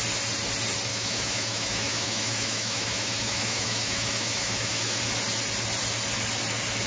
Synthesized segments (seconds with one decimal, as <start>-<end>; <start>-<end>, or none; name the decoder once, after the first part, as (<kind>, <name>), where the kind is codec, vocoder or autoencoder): 0.9-5.0 (autoencoder, DAC-VAE)